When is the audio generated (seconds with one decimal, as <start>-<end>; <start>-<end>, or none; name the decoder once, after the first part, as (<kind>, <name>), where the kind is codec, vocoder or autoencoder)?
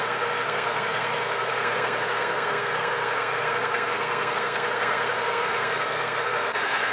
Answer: 0.0-6.9 (codec, SNAC)